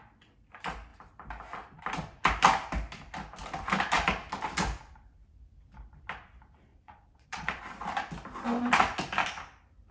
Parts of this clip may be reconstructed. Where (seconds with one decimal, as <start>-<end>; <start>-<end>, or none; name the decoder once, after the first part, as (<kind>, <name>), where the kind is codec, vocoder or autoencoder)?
6.7-7.6 (vocoder, Vocos)

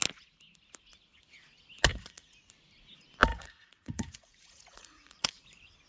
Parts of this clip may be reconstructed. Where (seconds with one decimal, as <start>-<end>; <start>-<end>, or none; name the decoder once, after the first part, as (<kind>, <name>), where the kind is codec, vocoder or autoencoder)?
1.9-2.5 (vocoder, Vocos); 3.3-5.4

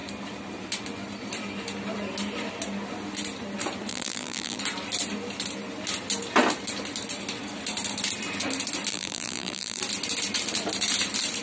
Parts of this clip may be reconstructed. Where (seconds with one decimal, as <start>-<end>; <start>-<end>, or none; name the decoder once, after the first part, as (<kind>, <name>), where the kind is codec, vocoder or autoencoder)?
3.9-4.6 (vocoder, BigVGAN v2); 8.9-9.8

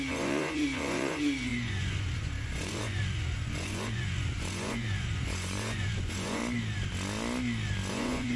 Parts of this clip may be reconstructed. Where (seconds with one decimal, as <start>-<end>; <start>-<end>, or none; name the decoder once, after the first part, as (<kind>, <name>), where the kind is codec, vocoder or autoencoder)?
0.0-6.4 (vocoder, Vocos); 7.9-8.4